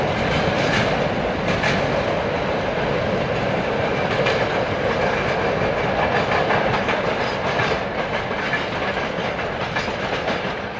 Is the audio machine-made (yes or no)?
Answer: no